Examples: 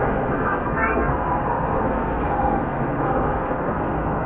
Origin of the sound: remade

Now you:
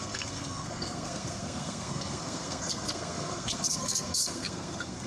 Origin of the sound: remade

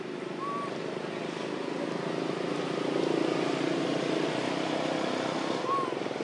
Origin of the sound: recorded